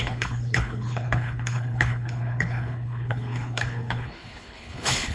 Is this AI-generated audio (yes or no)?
yes